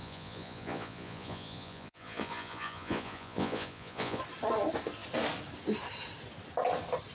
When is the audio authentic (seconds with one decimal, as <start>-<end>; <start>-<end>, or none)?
4.2-7.1